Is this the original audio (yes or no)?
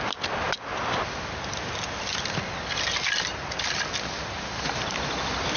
yes